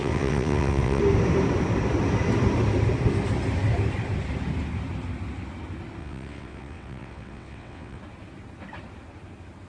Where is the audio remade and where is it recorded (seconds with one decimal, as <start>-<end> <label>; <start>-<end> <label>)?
0.0-1.0 remade; 1.0-6.0 recorded; 6.0-8.0 remade; 8.0-9.7 recorded